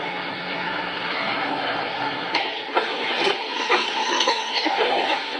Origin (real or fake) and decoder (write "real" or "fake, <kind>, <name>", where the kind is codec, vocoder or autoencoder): fake, codec, SNAC